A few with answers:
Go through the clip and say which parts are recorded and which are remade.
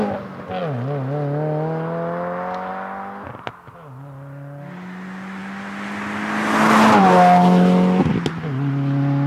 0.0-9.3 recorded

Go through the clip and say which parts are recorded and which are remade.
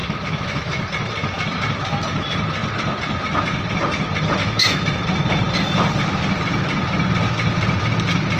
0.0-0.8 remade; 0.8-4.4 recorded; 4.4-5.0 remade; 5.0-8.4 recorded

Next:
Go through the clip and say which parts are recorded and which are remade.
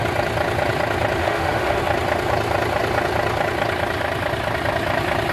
0.0-1.2 recorded; 1.2-1.8 remade; 1.8-5.3 recorded